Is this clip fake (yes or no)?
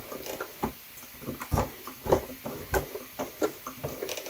no